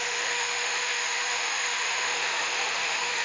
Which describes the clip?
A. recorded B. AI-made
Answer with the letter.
B